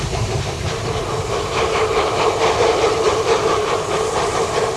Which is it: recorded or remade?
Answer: remade